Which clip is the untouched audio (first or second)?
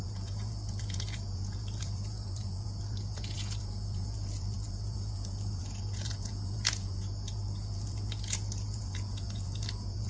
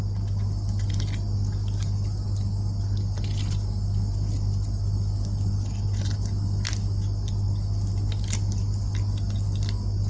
second